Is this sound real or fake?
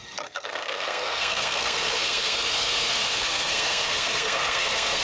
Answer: fake